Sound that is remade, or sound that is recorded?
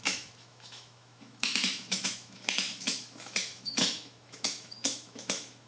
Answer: remade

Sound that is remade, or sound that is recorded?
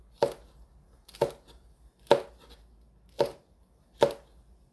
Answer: recorded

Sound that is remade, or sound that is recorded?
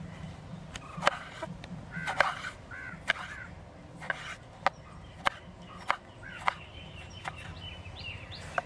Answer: recorded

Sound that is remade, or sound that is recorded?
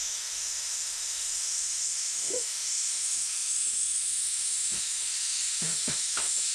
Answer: remade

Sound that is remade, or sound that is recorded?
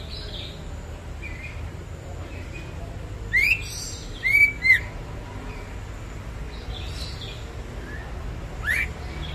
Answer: recorded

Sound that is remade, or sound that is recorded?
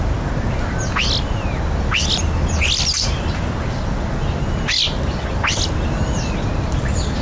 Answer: recorded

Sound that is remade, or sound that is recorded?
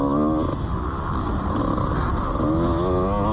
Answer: recorded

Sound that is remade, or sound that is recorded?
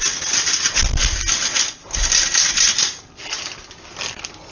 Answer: recorded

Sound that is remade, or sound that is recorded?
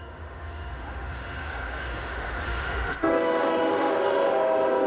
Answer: remade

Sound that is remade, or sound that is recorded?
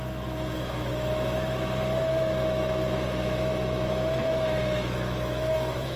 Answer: remade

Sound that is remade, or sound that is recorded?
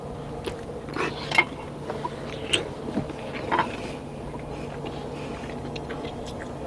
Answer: recorded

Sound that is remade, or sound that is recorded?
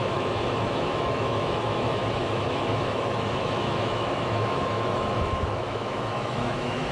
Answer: remade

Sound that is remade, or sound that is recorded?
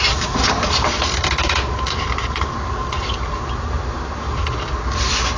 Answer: recorded